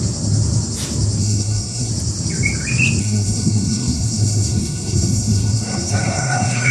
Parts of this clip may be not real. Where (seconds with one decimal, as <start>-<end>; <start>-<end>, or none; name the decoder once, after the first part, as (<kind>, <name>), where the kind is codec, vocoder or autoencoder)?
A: 1.2-1.9 (codec, SNAC); 3.0-6.7